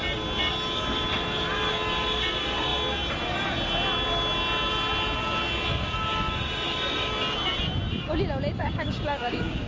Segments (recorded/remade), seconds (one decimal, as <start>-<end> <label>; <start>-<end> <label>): 0.0-8.6 recorded; 8.6-9.7 remade